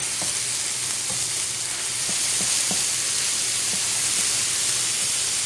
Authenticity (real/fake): real